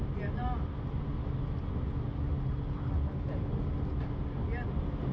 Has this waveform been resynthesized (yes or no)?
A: no